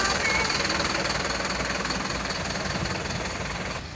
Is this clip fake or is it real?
real